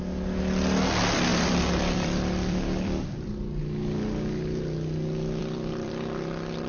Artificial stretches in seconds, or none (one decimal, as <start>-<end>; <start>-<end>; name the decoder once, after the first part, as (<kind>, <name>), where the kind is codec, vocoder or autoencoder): 1.3-3.6 (vocoder, BigVGAN v2); 5.4-5.9